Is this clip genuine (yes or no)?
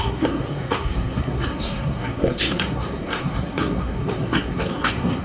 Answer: no